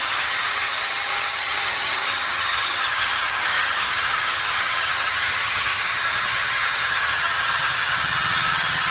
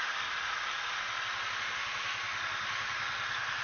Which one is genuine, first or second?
second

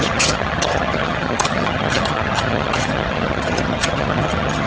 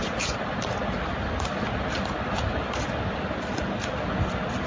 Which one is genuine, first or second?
second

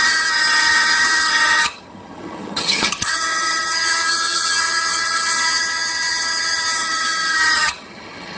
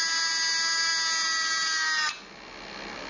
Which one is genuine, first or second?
second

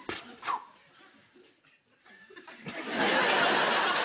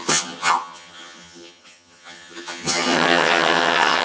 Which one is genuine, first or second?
first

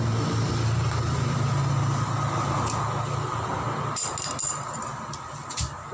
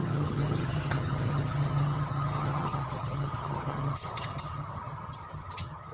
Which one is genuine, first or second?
first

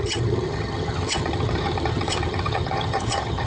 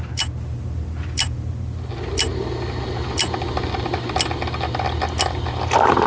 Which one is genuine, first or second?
second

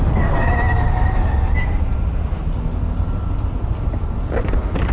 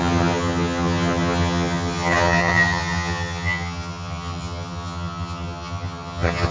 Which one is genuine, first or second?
first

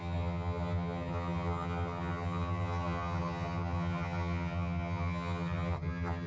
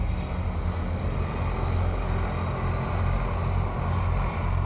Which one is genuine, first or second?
second